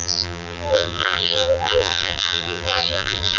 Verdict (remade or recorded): remade